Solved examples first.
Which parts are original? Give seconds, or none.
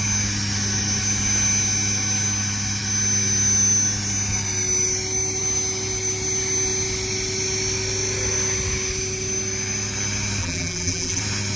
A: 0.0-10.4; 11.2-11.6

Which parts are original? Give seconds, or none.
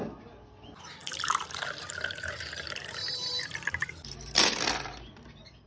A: 0.0-1.0; 4.4-5.7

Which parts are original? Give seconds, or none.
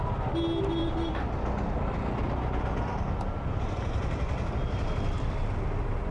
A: 0.0-6.1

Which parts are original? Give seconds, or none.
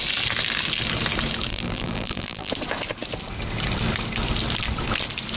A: 0.0-1.5; 2.5-5.4